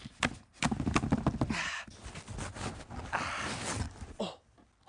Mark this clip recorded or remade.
recorded